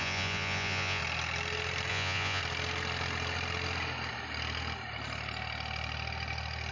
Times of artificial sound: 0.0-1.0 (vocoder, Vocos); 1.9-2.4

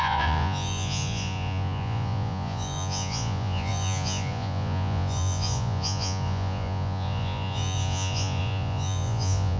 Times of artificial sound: 0.0-9.6 (vocoder, Vocos)

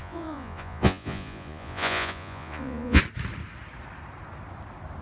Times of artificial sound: 0.0-3.0 (vocoder, Vocos)

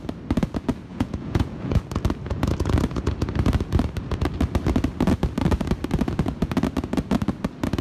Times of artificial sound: 0.9-1.8 (vocoder, Vocos)

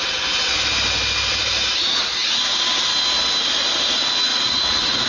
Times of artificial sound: 4.3-5.1 (vocoder, Vocos)